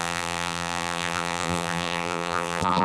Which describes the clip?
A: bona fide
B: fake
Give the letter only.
B